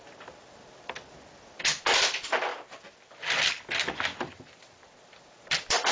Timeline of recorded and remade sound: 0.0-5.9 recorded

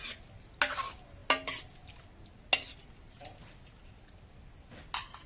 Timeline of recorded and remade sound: 0.0-5.3 recorded

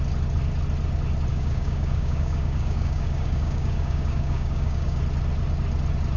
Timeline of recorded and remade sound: 0.0-1.3 recorded; 1.3-5.0 remade; 5.0-6.2 recorded

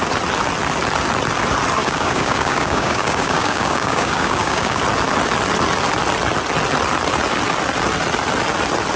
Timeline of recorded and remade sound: 0.0-1.8 recorded; 1.8-4.8 remade; 4.8-9.0 recorded